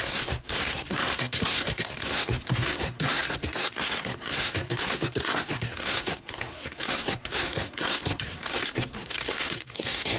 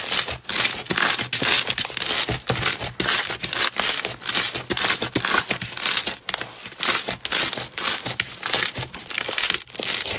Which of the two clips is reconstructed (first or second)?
first